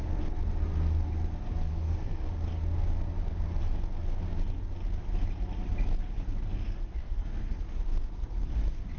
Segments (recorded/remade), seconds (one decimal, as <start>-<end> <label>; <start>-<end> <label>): 0.0-1.7 recorded; 1.7-2.3 remade; 2.3-7.0 recorded; 7.0-7.6 remade; 7.6-9.0 recorded